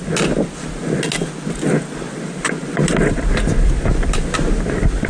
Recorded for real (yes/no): yes